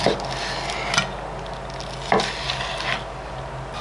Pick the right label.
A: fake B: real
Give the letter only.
B